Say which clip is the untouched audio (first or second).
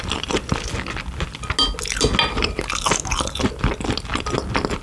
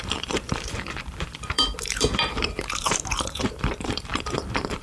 first